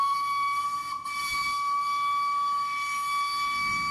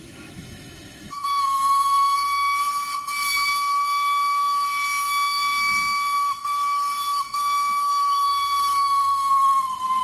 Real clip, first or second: first